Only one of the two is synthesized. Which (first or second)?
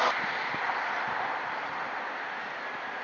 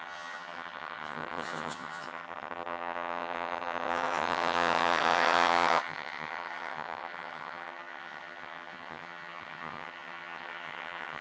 second